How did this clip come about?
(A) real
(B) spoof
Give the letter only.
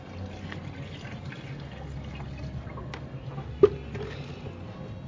A